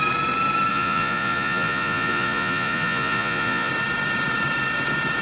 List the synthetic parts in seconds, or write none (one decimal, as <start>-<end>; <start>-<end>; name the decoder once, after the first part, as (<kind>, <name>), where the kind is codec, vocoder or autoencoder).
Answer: 0.7-3.7 (vocoder, Vocos)